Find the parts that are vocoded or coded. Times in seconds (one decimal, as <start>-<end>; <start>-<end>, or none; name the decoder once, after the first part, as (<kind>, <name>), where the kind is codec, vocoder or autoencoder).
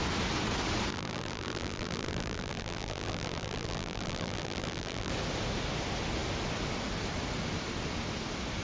0.9-5.1 (vocoder, BigVGAN v2)